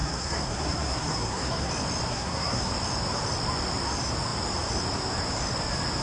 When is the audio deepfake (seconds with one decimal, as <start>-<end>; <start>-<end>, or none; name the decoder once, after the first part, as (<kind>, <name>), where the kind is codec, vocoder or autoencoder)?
0.0-1.7 (codec, SNAC); 2.1-2.7